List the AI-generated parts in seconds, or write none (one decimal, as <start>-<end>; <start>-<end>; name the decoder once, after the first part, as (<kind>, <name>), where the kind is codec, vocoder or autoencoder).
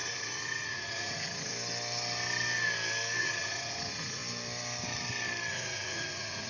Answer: 0.0-1.5 (vocoder, Vocos); 3.2-4.2; 5.5-6.5